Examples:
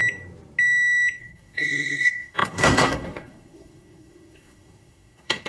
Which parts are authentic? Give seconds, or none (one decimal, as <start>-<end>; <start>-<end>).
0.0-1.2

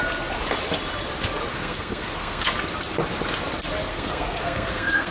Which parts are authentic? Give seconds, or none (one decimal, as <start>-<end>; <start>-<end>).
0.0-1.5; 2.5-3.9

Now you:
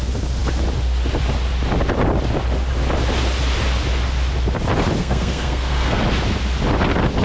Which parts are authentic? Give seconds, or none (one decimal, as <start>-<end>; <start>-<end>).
0.0-5.0; 6.0-7.2

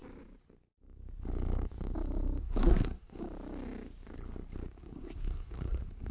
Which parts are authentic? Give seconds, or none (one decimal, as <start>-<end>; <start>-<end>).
0.0-2.4; 3.2-4.8

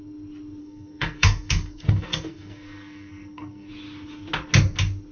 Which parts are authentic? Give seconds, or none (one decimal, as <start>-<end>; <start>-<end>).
0.0-0.6; 3.7-5.1

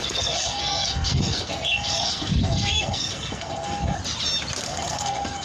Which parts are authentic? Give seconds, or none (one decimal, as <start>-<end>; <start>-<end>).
4.0-4.6

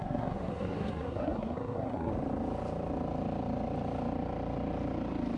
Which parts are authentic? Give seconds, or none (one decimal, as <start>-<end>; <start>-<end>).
2.1-5.4

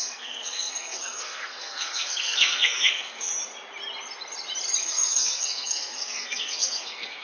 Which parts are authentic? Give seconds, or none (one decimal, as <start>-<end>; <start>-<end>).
3.3-4.8